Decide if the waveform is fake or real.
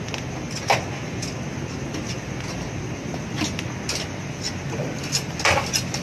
real